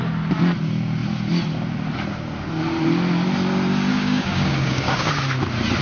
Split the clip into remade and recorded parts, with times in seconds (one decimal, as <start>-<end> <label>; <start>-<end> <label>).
0.0-3.9 recorded; 3.9-5.1 remade; 5.1-5.8 recorded